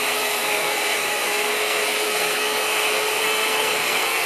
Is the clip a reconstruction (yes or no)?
yes